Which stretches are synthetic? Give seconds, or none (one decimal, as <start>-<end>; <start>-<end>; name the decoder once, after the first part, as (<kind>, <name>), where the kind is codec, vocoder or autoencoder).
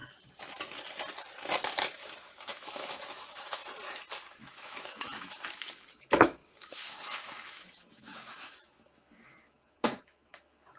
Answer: 2.2-3.6 (autoencoder, DAC-VAE); 4.3-10.8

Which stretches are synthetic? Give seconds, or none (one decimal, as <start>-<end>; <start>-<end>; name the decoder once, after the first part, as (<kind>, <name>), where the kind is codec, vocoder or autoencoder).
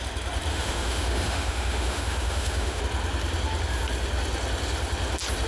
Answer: 0.5-2.8 (autoencoder, DAC-VAE)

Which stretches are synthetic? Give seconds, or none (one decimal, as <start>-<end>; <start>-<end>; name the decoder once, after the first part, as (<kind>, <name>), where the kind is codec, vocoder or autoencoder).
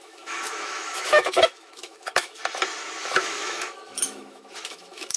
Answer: 0.0-2.4 (autoencoder, DAC-VAE); 3.0-5.2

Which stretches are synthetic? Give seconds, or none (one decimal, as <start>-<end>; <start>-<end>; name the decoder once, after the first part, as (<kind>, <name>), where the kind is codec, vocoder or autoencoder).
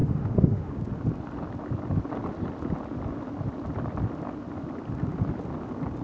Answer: 0.0-0.7 (autoencoder, DAC-VAE)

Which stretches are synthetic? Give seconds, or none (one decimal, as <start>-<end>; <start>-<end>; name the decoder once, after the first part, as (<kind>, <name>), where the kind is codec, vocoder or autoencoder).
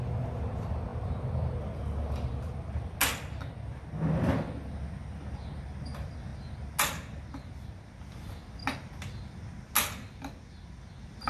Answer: none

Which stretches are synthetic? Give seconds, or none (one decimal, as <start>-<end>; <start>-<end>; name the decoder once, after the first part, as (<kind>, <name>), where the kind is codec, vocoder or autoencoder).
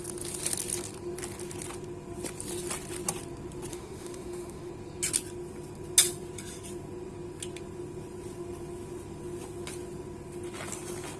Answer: 3.7-4.7 (autoencoder, DAC-VAE)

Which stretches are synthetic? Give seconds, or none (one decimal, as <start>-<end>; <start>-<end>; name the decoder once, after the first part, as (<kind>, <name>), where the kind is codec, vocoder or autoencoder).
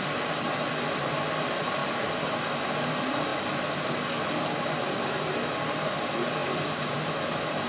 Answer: none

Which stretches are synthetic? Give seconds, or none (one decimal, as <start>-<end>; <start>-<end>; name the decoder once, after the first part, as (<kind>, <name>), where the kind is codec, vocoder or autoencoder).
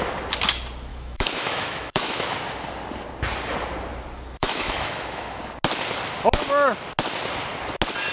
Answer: 0.9-2.1 (autoencoder, DAC-VAE); 4.4-5.4